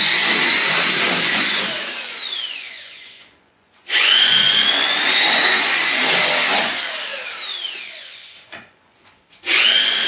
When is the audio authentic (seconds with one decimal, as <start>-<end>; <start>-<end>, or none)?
7.1-7.7